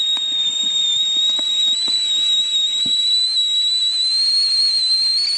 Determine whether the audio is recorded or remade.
recorded